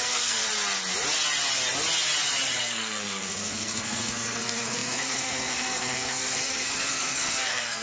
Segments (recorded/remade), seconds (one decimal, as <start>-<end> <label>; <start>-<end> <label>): 0.0-0.4 remade; 0.4-2.6 recorded; 2.6-7.8 remade